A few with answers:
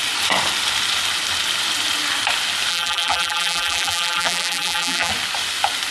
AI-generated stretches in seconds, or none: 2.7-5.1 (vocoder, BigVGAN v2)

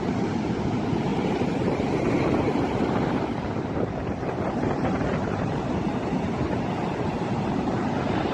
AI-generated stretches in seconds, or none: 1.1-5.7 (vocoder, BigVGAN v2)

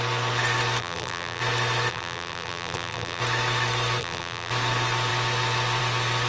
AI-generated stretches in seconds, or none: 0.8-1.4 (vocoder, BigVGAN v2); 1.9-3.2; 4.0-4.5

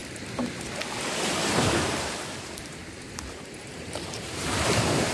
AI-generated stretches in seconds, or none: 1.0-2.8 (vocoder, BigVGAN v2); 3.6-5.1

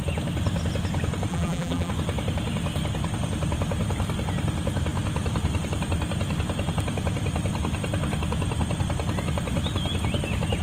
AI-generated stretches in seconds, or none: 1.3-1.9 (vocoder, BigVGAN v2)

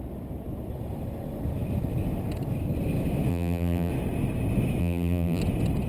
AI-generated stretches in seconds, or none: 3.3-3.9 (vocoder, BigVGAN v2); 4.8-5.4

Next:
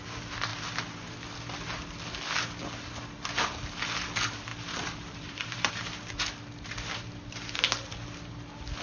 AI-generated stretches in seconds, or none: 4.5-5.7 (vocoder, BigVGAN v2)

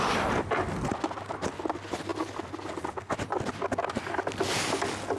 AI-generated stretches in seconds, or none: none